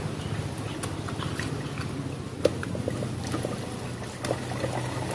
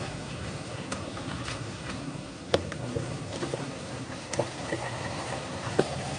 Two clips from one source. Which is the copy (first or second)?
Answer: second